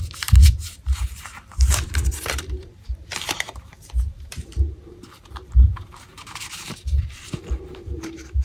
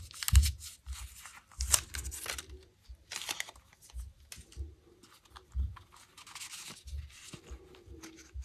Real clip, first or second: second